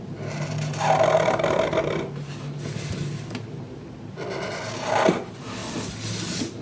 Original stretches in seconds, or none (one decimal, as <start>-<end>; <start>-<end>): 0.0-6.6